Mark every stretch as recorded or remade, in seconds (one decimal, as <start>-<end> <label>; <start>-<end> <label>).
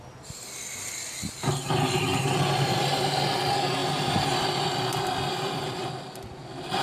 0.0-3.8 recorded; 3.8-6.2 remade; 6.2-6.8 recorded